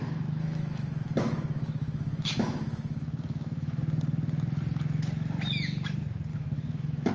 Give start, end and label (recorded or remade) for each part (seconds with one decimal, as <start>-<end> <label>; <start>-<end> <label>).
0.0-3.8 remade; 3.8-6.3 recorded; 6.3-7.1 remade